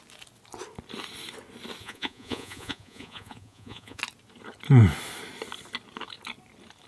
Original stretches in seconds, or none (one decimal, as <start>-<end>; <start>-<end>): 0.0-1.8; 4.0-6.9